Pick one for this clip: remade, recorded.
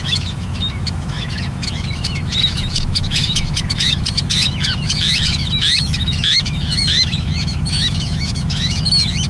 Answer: remade